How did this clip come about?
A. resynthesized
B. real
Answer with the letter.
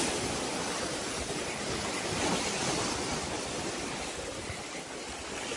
B